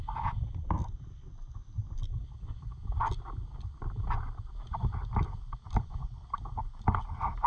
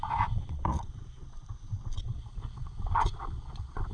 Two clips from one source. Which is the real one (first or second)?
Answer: first